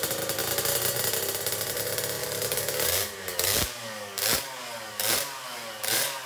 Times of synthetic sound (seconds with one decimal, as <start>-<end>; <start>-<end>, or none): 2.2-6.3